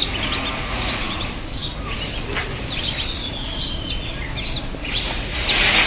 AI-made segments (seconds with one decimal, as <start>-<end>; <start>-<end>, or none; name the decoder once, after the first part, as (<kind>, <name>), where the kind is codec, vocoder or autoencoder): 0.6-1.2 (vocoder, Vocos); 4.8-5.9